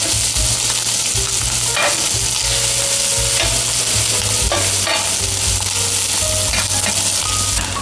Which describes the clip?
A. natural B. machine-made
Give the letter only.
A